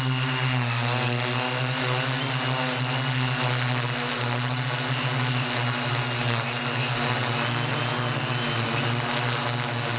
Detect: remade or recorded recorded